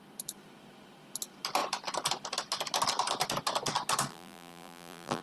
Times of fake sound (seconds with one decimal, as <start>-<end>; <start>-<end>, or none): 4.1-5.2